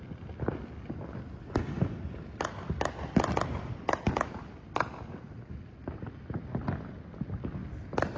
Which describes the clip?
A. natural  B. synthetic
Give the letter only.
A